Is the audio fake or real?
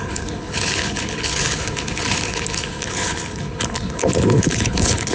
fake